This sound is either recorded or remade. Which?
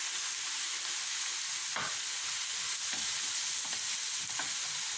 recorded